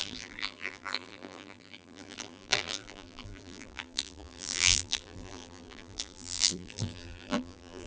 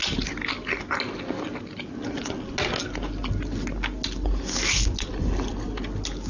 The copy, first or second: first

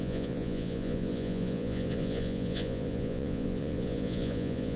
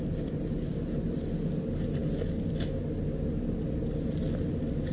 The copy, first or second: first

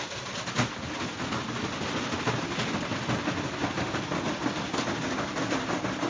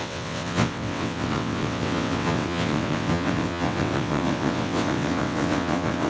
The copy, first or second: second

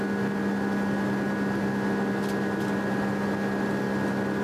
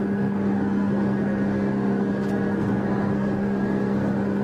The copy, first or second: second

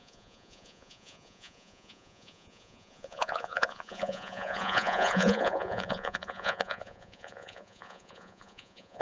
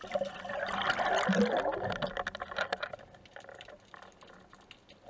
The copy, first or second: first